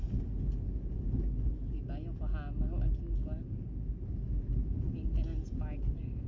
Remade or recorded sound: recorded